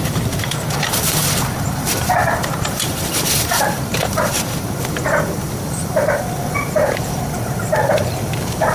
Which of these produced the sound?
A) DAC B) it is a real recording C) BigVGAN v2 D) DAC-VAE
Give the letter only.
C